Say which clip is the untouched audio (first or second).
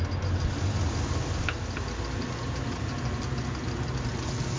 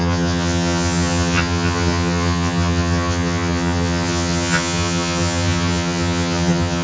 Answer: first